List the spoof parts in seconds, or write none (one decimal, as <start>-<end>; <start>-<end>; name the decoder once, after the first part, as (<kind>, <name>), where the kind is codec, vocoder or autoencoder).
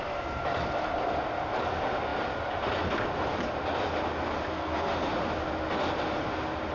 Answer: 4.5-5.1 (codec, SNAC)